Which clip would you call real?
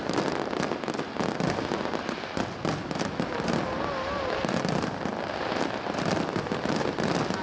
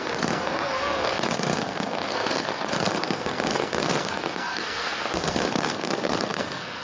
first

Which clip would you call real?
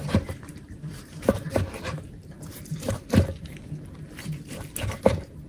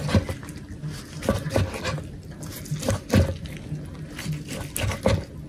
second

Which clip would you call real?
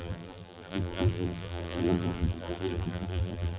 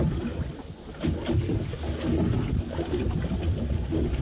second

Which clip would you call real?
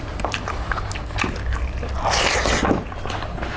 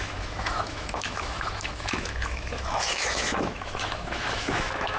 first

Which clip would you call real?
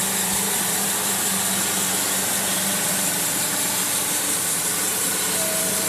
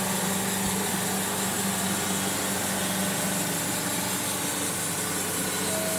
second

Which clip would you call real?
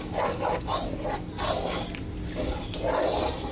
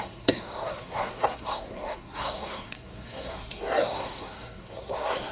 first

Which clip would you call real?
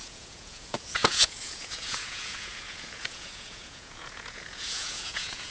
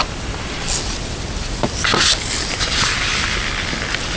second